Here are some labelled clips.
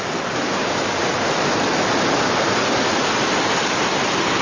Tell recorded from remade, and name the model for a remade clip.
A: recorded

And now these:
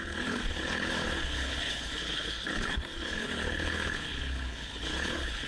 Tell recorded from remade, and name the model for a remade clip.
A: remade, codec, HILCodec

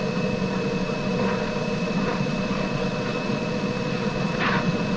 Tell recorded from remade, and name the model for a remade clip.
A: remade, vocoder, Vocos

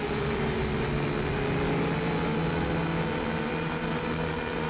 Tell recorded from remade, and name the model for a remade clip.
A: recorded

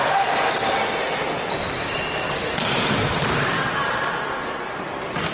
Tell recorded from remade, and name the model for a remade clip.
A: recorded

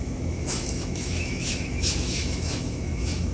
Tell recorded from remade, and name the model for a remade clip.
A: remade, autoencoder, DAC-VAE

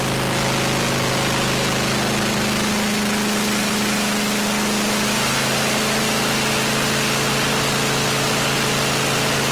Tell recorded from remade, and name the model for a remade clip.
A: recorded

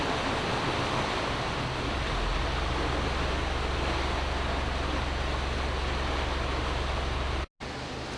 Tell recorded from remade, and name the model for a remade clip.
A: recorded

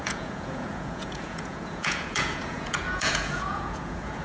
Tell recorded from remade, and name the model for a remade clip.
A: remade, vocoder, Vocos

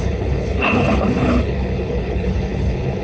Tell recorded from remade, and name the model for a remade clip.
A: remade, codec, HILCodec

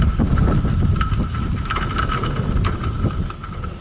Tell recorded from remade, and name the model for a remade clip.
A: recorded